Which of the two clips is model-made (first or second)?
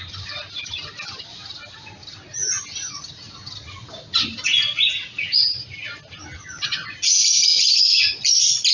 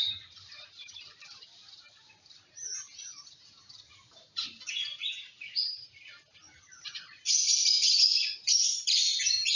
second